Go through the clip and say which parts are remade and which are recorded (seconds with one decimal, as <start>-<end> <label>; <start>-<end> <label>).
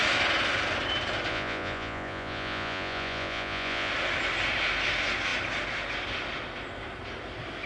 0.0-1.3 recorded; 1.3-3.9 remade; 3.9-7.7 recorded